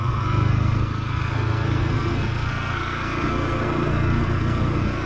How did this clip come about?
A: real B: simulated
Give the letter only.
B